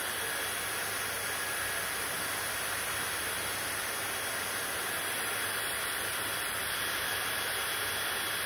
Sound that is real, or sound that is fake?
fake